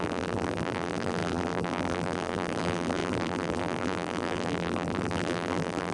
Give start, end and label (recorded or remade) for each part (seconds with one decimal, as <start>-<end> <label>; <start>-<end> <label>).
0.0-5.9 remade